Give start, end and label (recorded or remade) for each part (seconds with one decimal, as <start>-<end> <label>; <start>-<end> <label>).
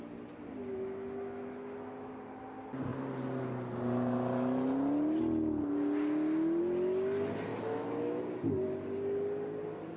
0.0-0.7 recorded; 0.7-2.1 remade; 2.1-7.5 recorded; 7.5-8.2 remade; 8.2-10.0 recorded